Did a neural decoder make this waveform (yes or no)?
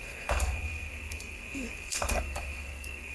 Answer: yes